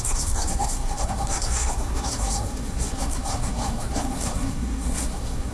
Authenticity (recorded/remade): remade